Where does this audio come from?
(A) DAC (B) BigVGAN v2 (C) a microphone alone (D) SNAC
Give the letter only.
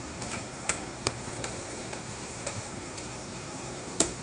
D